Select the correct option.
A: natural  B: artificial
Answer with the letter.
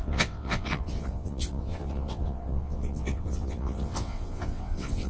B